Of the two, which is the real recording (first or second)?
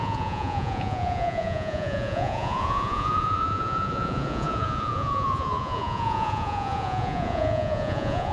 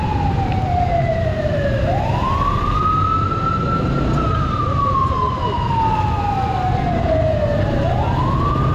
second